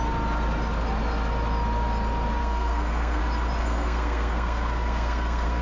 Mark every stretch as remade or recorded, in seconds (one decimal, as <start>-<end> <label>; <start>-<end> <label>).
0.0-2.4 recorded; 2.4-3.2 remade; 3.2-3.6 recorded; 3.6-5.6 remade